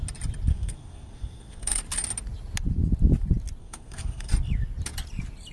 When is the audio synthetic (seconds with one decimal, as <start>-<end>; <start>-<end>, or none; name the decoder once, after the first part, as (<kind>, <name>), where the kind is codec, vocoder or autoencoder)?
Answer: 0.5-1.8 (codec, SNAC); 3.6-4.3